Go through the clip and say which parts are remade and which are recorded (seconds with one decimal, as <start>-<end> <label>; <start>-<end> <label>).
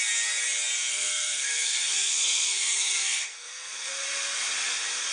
0.0-0.9 recorded; 0.9-3.9 remade; 3.9-5.1 recorded